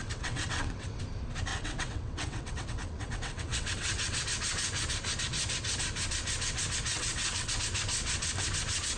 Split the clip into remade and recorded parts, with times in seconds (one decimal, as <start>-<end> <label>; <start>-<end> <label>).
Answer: 0.0-1.0 remade; 1.0-1.5 recorded; 1.5-4.2 remade; 4.2-6.9 recorded; 6.9-7.5 remade; 7.5-9.0 recorded